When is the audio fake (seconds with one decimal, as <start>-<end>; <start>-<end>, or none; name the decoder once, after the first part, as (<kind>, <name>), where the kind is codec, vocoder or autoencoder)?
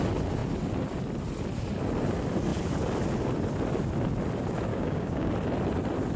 4.7-5.3 (codec, DAC)